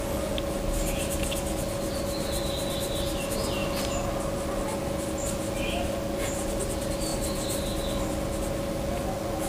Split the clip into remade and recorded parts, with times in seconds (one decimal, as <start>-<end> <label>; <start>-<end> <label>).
0.0-9.5 recorded